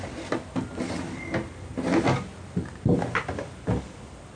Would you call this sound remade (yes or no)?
no